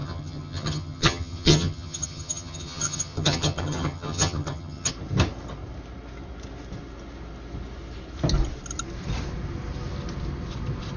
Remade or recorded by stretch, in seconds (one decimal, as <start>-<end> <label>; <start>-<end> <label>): 0.0-4.9 remade; 4.9-11.0 recorded